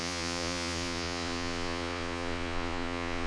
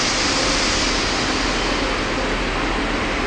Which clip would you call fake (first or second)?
first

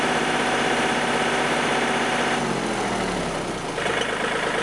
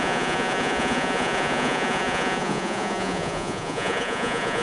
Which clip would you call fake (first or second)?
second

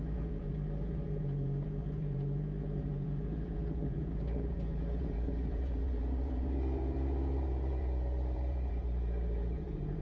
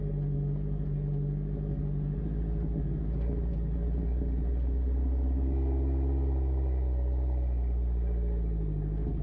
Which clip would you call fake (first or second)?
first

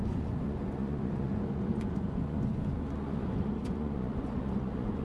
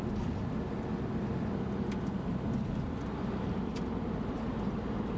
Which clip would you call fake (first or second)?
first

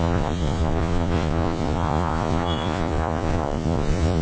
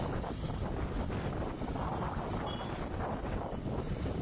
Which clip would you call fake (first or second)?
first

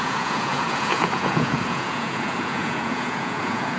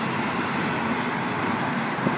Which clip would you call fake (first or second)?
first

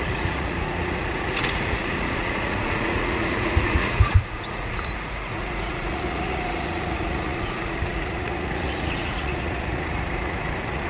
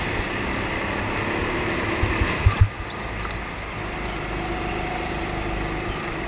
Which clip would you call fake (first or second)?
first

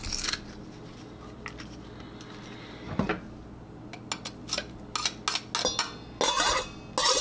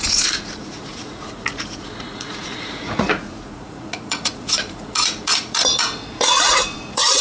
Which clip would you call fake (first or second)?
second